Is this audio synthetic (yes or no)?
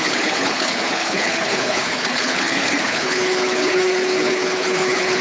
yes